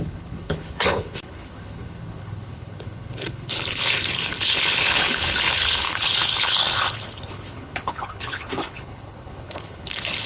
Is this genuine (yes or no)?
no